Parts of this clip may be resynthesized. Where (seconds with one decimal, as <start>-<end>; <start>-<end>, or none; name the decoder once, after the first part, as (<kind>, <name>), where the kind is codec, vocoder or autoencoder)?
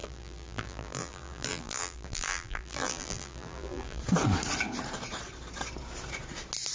0.0-4.0 (vocoder, BigVGAN v2)